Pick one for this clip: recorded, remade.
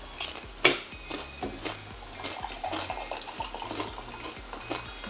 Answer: recorded